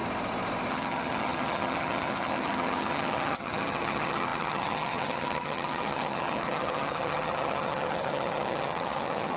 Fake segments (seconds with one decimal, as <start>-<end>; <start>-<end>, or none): 0.7-9.4

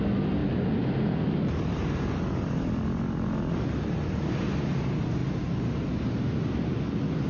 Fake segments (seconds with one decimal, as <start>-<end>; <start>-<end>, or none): none

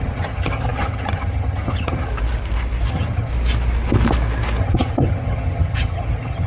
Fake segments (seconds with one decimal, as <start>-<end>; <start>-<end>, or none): 0.0-2.1; 2.9-3.3; 4.6-6.5